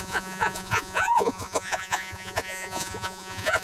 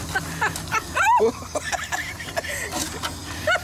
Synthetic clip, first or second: first